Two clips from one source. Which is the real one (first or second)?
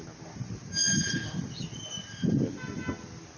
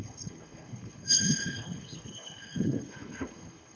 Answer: first